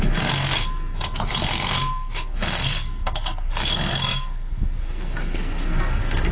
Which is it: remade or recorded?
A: remade